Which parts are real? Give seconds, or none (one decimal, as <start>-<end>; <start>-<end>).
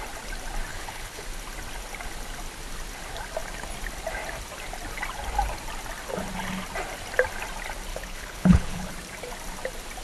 0.0-0.7; 1.2-7.9; 8.9-10.0